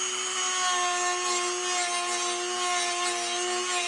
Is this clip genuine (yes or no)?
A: yes